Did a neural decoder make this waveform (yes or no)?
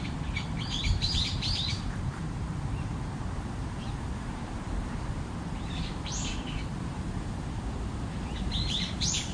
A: yes